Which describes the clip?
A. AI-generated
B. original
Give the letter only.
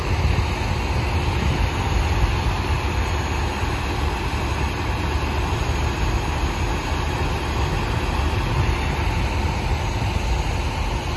B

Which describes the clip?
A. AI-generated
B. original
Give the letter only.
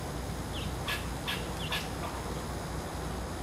B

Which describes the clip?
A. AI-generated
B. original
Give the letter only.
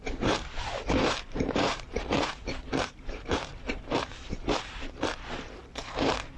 A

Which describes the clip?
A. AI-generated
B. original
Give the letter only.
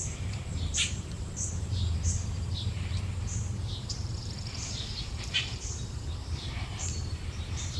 A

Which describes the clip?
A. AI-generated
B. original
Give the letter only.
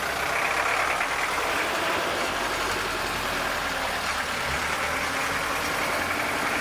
B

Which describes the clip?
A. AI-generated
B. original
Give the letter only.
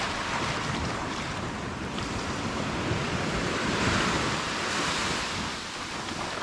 A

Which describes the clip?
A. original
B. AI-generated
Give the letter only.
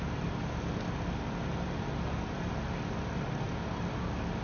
A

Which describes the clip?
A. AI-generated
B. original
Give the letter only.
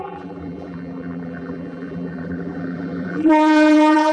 A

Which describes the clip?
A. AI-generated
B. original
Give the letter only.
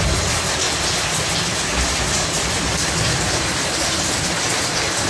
B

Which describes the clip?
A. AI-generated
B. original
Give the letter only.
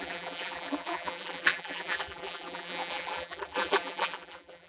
A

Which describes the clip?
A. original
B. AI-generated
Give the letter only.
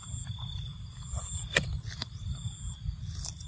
A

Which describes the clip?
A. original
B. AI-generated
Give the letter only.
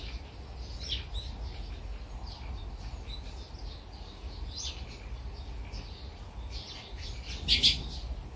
A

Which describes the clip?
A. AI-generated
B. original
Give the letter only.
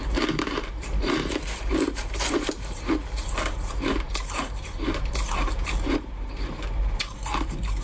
A